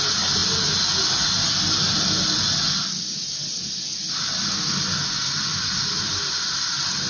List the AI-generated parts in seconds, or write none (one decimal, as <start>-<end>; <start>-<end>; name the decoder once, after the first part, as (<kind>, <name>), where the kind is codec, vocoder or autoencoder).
none